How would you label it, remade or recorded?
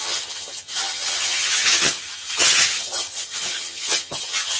remade